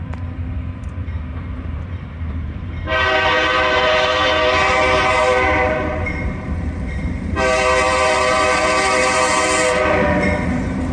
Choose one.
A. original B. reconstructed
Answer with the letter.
B